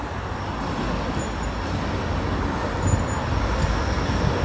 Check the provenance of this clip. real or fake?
real